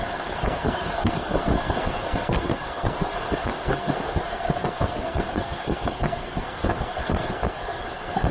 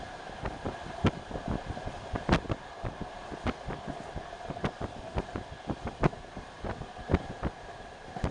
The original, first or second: second